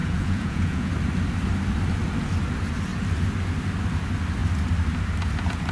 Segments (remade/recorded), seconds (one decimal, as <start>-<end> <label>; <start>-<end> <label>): 0.0-0.9 remade; 0.9-5.7 recorded